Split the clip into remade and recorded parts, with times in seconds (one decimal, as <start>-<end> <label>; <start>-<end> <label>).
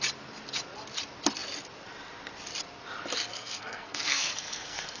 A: 0.0-3.3 recorded; 3.3-5.0 remade